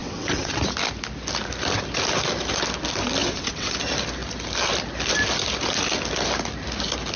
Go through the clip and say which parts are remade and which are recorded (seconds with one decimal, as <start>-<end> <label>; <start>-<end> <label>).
0.0-0.6 remade; 0.6-3.2 recorded; 3.2-3.7 remade; 3.7-7.2 recorded

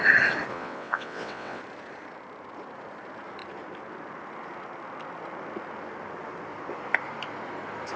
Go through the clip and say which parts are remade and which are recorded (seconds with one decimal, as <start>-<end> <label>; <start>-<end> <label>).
0.0-0.5 recorded; 0.5-1.6 remade; 1.6-8.0 recorded

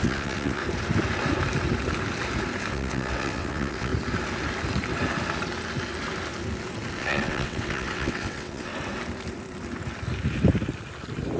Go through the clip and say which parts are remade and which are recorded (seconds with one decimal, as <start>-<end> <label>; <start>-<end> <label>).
0.0-0.6 remade; 0.6-2.7 recorded; 2.7-3.9 remade; 3.9-7.0 recorded; 7.0-8.7 remade; 8.7-11.4 recorded

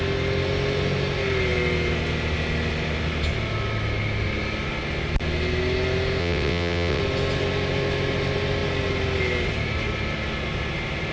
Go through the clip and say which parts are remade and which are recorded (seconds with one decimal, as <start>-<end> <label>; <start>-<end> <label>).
0.0-6.2 recorded; 6.2-7.0 remade; 7.0-11.1 recorded

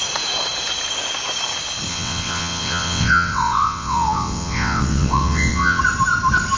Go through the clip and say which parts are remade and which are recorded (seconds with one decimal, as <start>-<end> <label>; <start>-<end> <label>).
0.0-1.9 recorded; 1.9-5.8 remade; 5.8-6.6 recorded

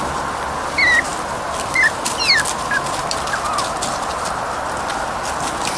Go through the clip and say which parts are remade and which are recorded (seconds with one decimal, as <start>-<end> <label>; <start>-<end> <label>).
0.0-5.8 recorded

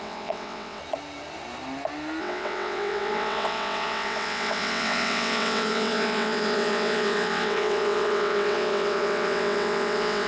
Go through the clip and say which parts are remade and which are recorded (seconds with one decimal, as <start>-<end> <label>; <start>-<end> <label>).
0.0-0.8 remade; 0.8-2.2 recorded; 2.2-10.3 remade

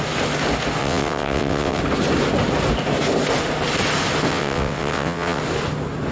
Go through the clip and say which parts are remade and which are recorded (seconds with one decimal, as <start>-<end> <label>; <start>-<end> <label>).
0.0-0.8 recorded; 0.8-1.8 remade; 1.8-4.3 recorded; 4.3-5.4 remade; 5.4-6.1 recorded